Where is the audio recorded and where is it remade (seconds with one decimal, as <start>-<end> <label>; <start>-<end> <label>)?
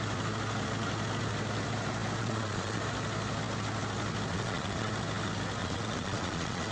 0.0-2.2 recorded; 2.2-2.8 remade; 2.8-4.3 recorded; 4.3-4.9 remade; 4.9-5.6 recorded; 5.6-6.7 remade